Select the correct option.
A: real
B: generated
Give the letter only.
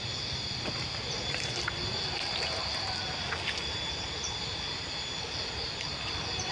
B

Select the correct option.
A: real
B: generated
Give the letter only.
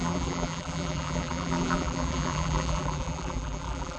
B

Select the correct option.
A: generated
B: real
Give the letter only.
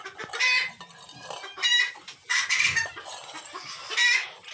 B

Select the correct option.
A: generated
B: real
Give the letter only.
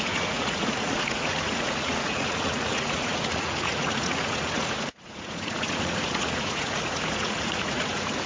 A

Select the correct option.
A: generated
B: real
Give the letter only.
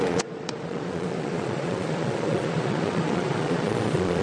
A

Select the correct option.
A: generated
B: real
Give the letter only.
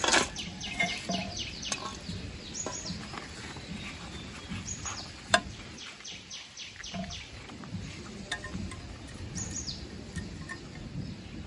A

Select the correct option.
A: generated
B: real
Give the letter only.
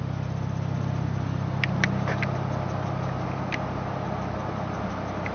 B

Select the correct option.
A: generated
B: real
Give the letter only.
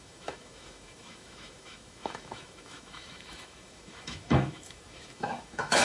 A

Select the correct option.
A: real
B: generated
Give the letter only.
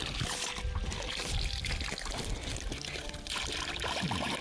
A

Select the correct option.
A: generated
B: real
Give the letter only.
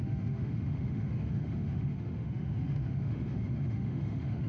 A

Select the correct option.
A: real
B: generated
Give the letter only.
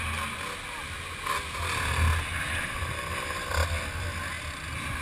A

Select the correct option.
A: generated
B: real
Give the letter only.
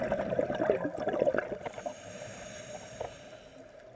B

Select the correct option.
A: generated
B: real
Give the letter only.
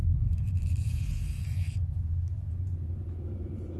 A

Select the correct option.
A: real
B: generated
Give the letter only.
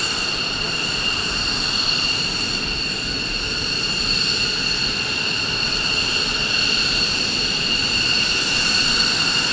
A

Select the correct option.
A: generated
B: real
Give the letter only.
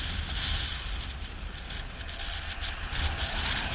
B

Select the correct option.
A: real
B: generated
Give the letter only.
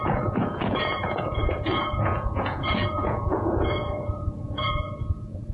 B